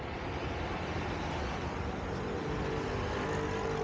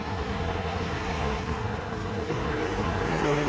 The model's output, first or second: second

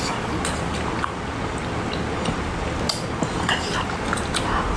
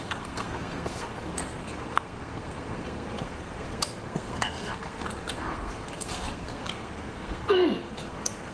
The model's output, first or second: second